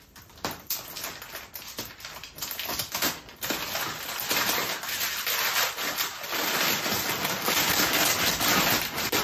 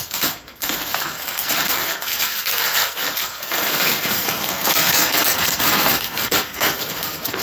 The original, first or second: first